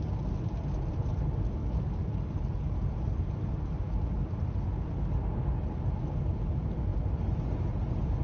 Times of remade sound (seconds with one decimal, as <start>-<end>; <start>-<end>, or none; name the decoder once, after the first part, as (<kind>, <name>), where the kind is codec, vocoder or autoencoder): none

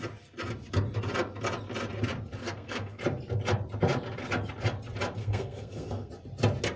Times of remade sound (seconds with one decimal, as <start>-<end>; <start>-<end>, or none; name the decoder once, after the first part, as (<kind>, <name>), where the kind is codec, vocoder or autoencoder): 2.4-3.0 (codec, SNAC); 5.2-6.1